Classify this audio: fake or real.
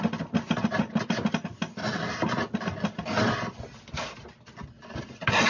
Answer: real